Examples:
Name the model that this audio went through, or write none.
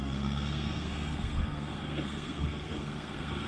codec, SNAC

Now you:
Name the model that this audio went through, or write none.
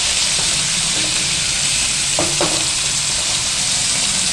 none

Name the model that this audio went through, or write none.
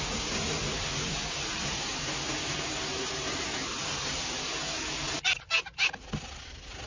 none